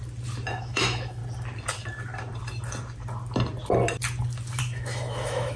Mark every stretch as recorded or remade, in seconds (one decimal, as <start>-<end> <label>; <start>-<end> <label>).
0.0-0.5 recorded; 0.5-1.2 remade; 1.2-4.6 recorded; 4.6-5.6 remade